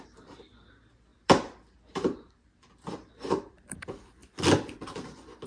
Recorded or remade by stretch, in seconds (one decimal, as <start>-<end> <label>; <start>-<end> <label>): 0.0-1.1 remade; 1.1-1.9 recorded; 1.9-5.5 remade